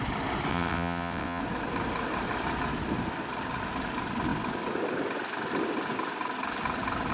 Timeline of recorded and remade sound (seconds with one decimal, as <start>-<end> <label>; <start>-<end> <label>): 0.0-0.5 recorded; 0.5-1.4 remade; 1.4-7.1 recorded